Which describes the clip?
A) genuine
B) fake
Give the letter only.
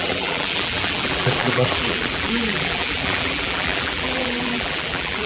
B